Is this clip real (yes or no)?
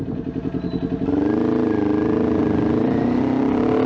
yes